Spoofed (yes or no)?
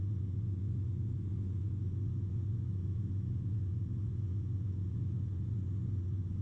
yes